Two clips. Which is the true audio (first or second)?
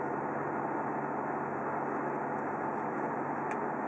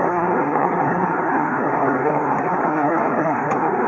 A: first